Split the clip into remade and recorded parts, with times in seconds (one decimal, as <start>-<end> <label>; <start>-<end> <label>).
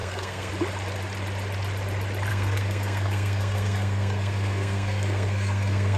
0.0-0.5 remade; 0.5-2.3 recorded; 2.3-6.0 remade